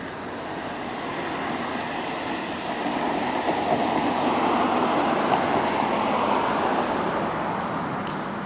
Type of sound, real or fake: real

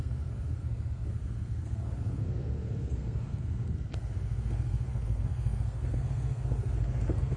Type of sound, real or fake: fake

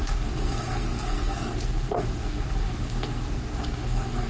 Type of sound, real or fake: fake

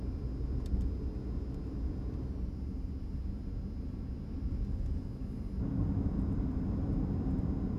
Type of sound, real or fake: real